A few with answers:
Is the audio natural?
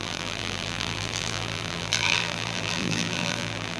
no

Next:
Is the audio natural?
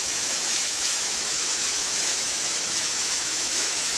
no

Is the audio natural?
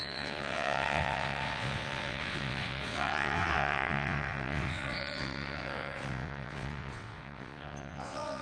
no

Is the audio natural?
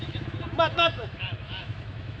no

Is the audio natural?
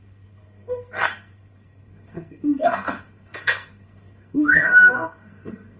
no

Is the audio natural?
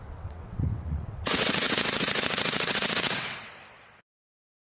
no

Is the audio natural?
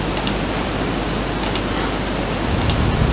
yes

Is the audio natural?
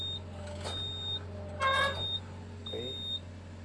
yes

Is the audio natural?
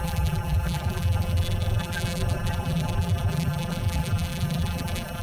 no